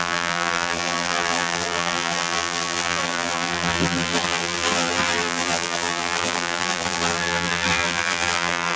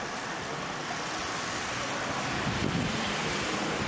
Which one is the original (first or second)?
second